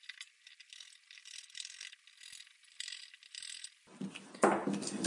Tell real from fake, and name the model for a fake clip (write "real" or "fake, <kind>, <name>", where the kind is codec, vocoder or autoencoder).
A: real